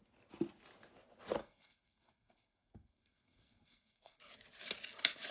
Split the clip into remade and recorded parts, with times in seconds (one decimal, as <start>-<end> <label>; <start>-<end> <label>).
0.0-1.4 recorded; 1.4-4.2 remade; 4.2-5.3 recorded